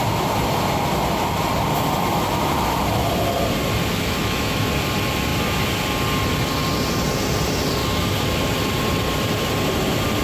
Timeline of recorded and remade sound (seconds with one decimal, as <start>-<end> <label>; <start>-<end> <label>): 0.0-3.9 recorded; 3.9-4.7 remade; 4.7-10.2 recorded